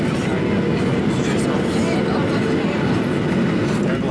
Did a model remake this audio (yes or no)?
no